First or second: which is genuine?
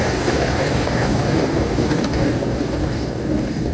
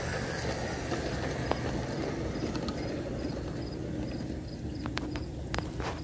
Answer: second